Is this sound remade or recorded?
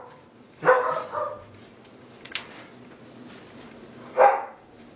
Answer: remade